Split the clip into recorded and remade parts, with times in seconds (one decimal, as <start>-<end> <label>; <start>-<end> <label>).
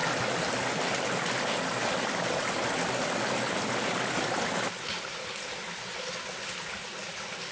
0.0-7.5 recorded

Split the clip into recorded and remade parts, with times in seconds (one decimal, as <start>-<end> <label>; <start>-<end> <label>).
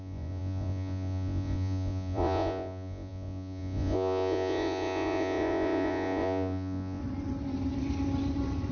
0.0-7.0 remade; 7.0-8.7 recorded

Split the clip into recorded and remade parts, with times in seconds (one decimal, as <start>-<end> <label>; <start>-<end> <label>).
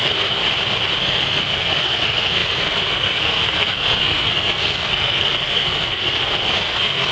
0.0-0.4 remade; 0.4-1.0 recorded; 1.0-7.1 remade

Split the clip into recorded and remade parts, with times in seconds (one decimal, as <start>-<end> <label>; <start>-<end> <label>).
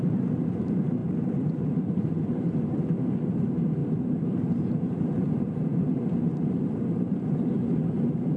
0.0-8.4 remade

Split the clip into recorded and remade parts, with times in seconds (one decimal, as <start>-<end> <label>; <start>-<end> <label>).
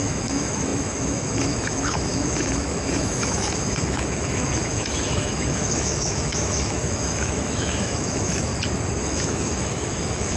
0.0-8.5 remade; 8.5-9.0 recorded; 9.0-10.4 remade